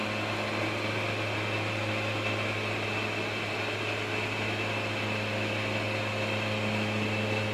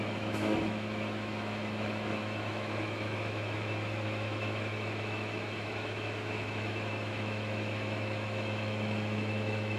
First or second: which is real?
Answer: first